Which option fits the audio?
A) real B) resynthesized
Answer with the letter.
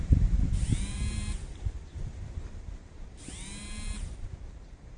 B